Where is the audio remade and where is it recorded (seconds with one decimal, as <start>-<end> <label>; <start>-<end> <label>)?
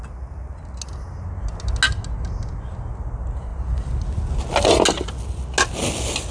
0.0-6.3 recorded